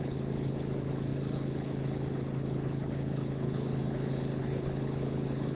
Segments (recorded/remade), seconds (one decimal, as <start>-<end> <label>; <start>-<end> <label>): 0.0-5.5 remade